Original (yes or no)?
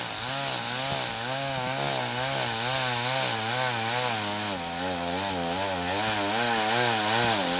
yes